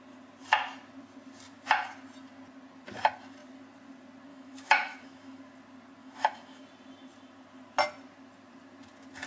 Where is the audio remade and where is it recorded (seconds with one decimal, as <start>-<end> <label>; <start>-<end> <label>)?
0.0-4.3 recorded; 4.3-5.4 remade; 5.4-6.0 recorded; 6.0-6.6 remade; 6.6-9.3 recorded